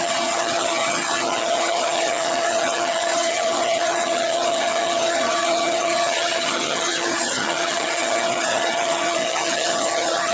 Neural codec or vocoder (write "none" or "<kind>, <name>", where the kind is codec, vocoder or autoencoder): vocoder, HiFi-GAN